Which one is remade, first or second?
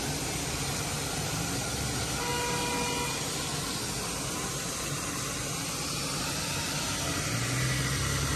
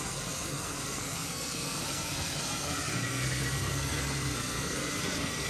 second